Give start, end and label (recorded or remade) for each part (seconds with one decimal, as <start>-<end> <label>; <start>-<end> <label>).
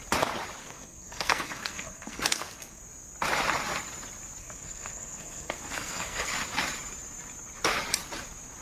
0.0-0.6 recorded; 0.6-2.8 remade; 2.8-4.4 recorded; 4.4-6.3 remade; 6.3-8.6 recorded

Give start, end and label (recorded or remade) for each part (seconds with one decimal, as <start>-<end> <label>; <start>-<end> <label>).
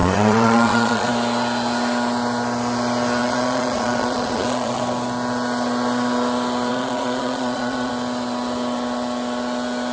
0.0-1.1 remade; 1.1-3.2 recorded; 3.2-4.8 remade; 4.8-6.7 recorded; 6.7-7.9 remade; 7.9-9.9 recorded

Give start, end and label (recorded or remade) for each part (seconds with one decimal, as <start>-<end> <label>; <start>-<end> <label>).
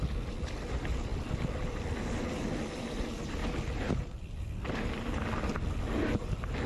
0.0-6.7 recorded